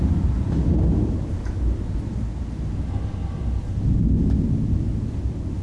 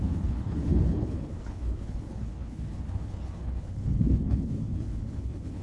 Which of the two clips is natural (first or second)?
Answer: first